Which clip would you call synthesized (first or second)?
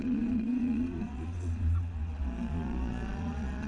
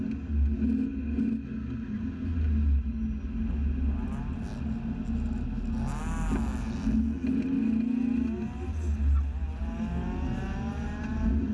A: first